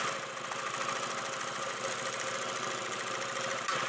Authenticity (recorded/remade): recorded